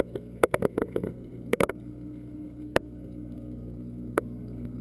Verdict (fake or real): fake